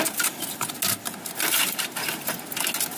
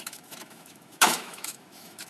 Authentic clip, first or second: first